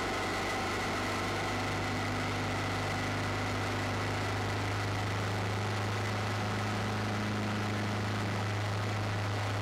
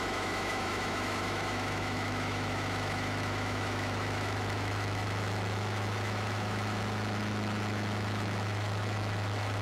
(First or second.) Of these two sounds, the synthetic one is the second